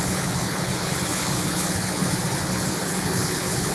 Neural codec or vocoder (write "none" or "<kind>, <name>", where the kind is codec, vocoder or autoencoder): codec, HILCodec